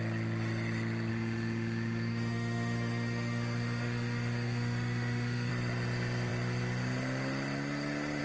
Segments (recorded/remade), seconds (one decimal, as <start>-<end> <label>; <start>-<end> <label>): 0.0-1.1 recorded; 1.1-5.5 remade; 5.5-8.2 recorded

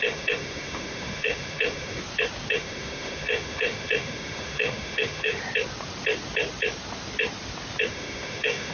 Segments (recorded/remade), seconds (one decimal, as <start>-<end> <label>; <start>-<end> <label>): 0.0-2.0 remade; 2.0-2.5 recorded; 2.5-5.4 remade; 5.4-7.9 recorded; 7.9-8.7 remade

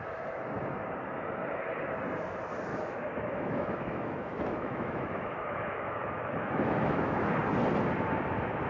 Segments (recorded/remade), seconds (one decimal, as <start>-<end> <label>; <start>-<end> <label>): 0.0-2.7 recorded; 2.7-7.3 remade; 7.3-8.7 recorded